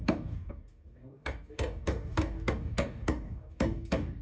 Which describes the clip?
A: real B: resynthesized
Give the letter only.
B